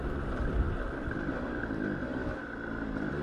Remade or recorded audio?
remade